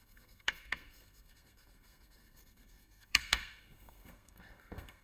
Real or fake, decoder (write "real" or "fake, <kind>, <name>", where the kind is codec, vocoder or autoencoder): fake, codec, SNAC